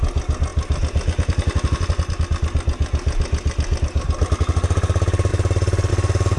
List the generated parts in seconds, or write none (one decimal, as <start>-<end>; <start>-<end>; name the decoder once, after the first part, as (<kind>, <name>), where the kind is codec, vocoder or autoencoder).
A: none